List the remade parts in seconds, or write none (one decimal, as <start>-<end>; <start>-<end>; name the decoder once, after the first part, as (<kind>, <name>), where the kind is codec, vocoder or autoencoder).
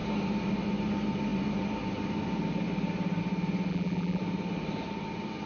3.7-4.2 (vocoder, BigVGAN v2)